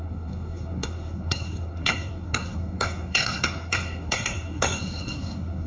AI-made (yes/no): yes